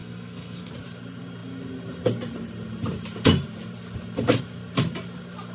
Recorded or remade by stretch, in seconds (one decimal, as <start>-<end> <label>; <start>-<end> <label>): 0.0-0.7 remade; 0.7-5.5 recorded